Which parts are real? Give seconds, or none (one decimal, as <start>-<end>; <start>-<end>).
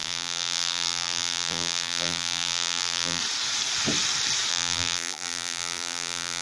3.2-4.5